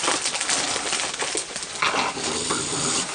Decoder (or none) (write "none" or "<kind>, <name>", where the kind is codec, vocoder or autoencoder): none